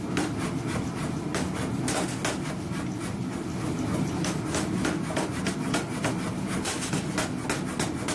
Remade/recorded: recorded